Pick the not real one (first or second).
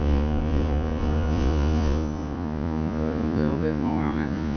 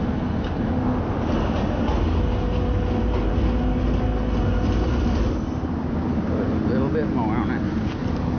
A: first